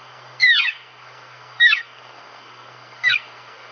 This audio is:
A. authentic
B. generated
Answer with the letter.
B